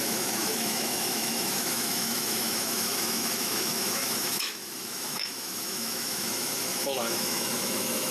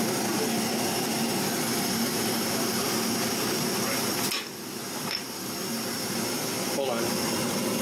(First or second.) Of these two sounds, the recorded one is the second